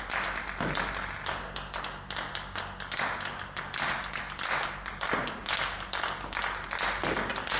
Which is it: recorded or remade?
recorded